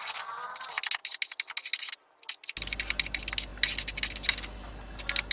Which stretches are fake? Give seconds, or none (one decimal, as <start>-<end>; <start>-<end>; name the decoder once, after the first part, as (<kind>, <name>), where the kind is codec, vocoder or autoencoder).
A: none